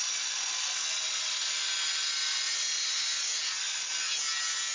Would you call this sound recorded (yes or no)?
yes